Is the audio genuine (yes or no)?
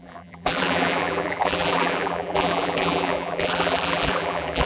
no